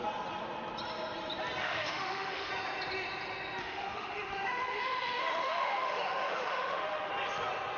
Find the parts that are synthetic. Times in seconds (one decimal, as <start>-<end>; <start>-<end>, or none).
1.6-2.5; 3.6-7.1